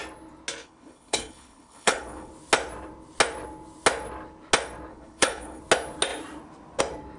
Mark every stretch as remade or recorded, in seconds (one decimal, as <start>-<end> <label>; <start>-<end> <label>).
0.0-0.6 recorded; 0.6-2.3 remade; 2.3-4.9 recorded; 4.9-5.6 remade; 5.6-7.2 recorded